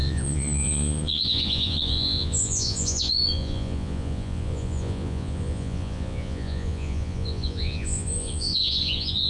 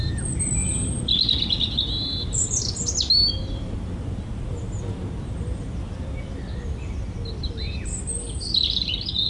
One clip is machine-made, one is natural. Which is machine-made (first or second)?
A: first